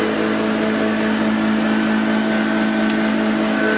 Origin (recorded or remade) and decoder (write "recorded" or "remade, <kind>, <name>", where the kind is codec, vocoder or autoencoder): recorded